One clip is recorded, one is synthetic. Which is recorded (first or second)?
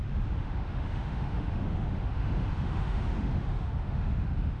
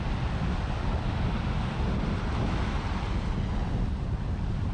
second